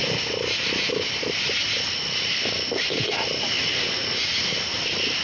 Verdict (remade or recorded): recorded